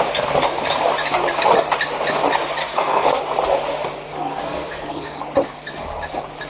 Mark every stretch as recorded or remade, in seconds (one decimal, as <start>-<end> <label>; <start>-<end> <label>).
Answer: 0.0-2.6 recorded; 2.6-3.2 remade; 3.2-4.1 recorded; 4.1-5.2 remade; 5.2-6.5 recorded